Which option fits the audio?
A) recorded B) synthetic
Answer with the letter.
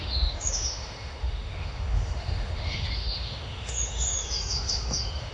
B